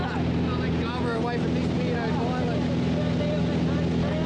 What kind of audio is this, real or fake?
real